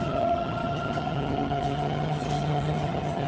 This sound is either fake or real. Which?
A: fake